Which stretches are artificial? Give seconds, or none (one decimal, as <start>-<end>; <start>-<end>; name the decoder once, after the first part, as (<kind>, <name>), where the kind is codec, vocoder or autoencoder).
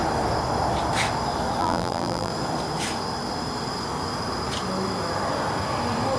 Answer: 1.6-2.3 (vocoder, BigVGAN v2)